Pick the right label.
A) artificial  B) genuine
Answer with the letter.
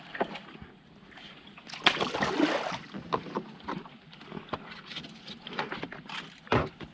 B